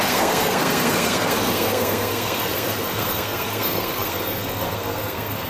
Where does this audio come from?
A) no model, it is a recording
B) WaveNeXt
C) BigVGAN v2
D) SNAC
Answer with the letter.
D